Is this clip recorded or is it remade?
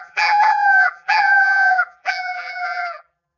remade